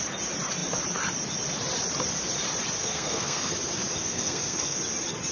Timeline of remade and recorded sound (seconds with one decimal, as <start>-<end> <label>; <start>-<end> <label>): 0.0-2.8 recorded; 2.8-3.5 remade; 3.5-4.0 recorded; 4.0-4.8 remade; 4.8-5.3 recorded